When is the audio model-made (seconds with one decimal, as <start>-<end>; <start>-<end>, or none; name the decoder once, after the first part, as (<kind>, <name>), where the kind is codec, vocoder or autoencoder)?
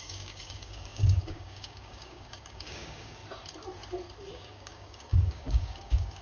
0.0-3.2 (codec, DAC); 4.3-6.2